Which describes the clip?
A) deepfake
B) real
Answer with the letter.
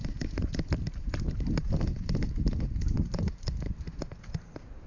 B